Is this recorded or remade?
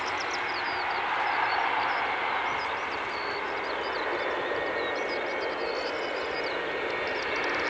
recorded